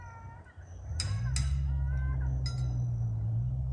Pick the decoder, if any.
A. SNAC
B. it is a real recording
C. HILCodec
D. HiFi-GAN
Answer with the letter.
B